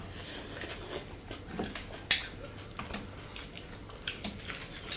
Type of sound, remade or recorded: recorded